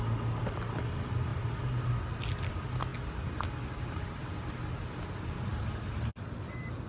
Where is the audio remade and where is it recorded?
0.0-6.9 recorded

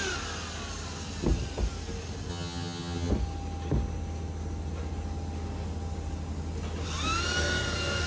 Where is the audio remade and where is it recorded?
0.0-2.3 recorded; 2.3-3.1 remade; 3.1-8.1 recorded